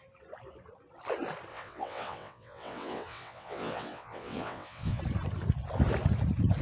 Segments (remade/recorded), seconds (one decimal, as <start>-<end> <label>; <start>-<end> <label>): 0.0-1.5 recorded; 1.5-5.0 remade; 5.0-6.6 recorded